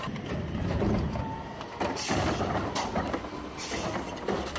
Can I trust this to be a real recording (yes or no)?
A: yes